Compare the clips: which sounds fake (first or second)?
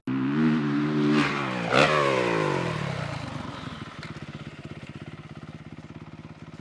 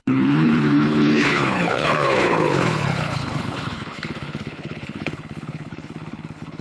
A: second